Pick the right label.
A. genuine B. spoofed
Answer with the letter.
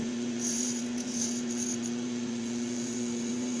B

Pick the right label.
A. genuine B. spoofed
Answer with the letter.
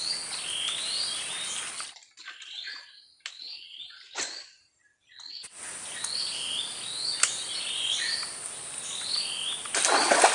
A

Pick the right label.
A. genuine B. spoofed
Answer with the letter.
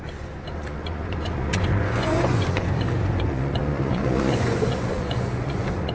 B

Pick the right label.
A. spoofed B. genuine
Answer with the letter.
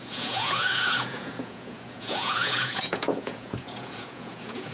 A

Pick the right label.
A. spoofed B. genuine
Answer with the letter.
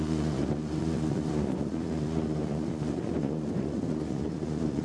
A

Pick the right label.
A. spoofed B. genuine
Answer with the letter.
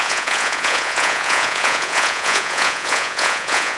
A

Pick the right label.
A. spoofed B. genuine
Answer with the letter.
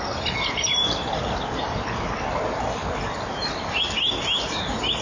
B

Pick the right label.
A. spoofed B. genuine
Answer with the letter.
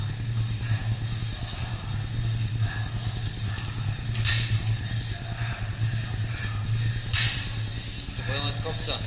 B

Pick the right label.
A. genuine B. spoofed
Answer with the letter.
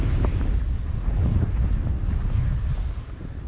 A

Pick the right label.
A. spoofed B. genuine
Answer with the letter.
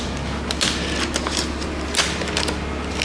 B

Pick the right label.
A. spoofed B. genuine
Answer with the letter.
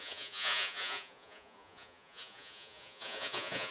A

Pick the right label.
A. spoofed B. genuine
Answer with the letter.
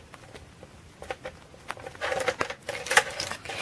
B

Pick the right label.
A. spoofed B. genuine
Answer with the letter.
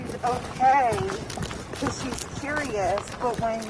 B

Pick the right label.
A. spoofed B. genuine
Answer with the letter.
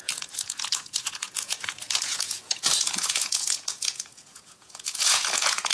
A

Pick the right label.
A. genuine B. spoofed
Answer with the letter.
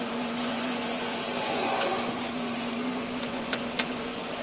B